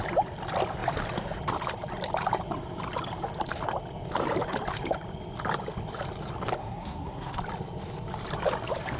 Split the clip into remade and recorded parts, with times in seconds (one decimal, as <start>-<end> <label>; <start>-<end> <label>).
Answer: 0.0-6.6 recorded; 6.6-7.4 remade; 7.4-9.0 recorded